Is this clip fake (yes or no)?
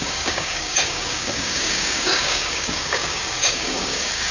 yes